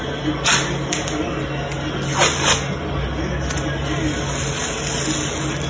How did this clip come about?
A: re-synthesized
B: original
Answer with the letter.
B